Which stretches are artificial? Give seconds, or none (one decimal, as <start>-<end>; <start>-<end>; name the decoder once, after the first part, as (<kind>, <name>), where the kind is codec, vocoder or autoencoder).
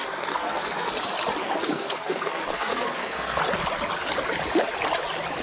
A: 0.0-0.9 (codec, SNAC); 1.4-3.4